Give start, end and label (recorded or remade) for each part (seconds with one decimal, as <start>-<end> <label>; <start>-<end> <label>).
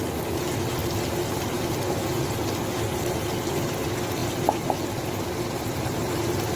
0.0-6.6 recorded